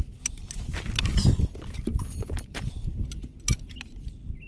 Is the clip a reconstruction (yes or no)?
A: no